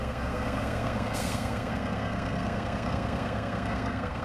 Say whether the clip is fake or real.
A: fake